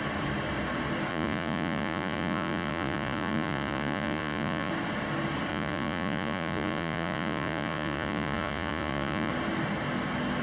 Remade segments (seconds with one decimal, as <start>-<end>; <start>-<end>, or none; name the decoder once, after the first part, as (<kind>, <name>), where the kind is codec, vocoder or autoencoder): 1.1-4.7 (vocoder, Vocos); 5.5-9.3